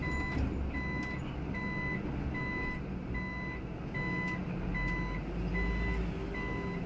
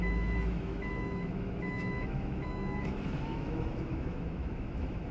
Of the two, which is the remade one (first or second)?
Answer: second